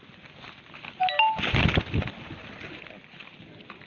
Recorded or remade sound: recorded